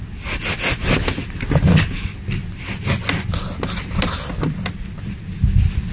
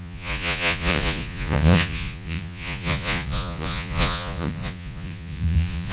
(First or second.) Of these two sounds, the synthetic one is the second